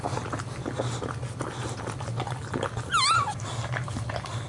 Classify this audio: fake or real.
real